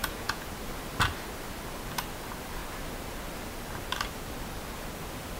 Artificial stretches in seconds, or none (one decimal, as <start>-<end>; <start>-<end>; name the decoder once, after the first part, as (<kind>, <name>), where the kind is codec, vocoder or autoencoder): 0.0-0.5 (vocoder, Vocos)